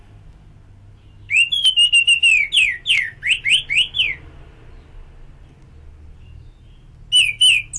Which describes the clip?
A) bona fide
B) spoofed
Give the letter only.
A